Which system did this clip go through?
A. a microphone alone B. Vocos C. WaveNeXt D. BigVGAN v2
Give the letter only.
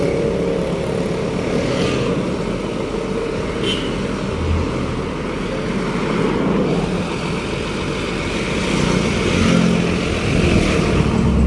A